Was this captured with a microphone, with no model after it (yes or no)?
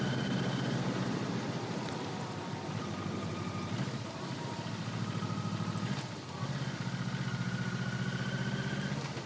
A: yes